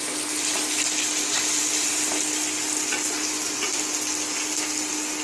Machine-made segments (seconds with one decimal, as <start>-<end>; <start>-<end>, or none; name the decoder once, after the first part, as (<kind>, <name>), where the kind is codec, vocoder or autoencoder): none